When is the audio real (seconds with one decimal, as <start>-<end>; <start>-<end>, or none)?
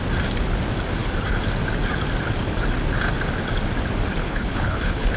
0.0-4.2